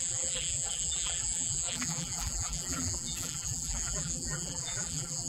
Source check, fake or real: fake